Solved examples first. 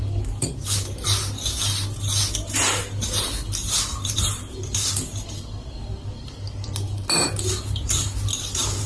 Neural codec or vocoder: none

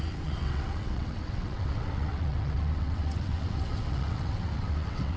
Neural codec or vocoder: vocoder, WaveNeXt